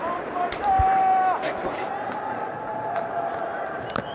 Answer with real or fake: fake